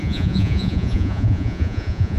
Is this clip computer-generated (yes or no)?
yes